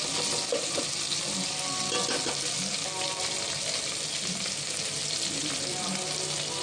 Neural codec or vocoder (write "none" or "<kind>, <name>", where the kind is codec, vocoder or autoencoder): none